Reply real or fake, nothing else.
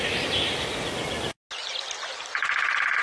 real